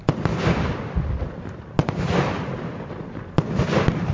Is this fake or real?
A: real